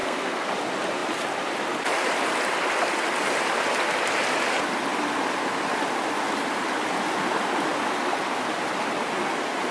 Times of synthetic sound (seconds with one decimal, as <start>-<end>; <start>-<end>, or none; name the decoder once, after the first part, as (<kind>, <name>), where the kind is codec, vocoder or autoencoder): 0.0-0.5 (codec, SNAC)